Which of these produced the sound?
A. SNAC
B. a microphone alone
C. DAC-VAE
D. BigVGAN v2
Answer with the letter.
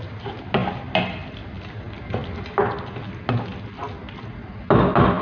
B